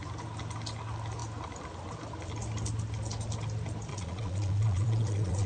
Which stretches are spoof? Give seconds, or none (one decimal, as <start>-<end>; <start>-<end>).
3.9-5.5